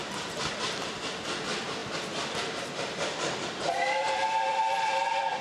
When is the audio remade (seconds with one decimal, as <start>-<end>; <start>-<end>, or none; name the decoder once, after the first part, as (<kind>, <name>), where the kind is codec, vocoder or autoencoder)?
0.8-5.4 (vocoder, BigVGAN v2)